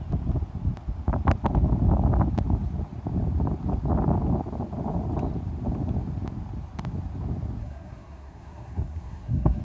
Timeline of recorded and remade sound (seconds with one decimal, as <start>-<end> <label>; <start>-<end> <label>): 0.0-7.6 recorded; 7.6-9.6 remade

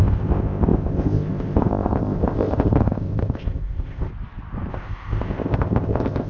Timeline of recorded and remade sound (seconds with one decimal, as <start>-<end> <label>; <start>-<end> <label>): 0.0-4.1 remade; 4.1-4.7 recorded; 4.7-6.3 remade

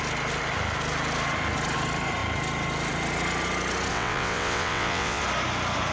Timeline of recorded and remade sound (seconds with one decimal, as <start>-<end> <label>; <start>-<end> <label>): 0.0-3.9 recorded; 3.9-5.2 remade; 5.2-5.9 recorded